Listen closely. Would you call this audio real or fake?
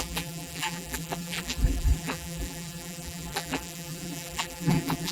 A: fake